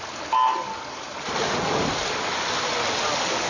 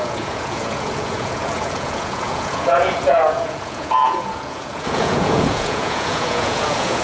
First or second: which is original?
first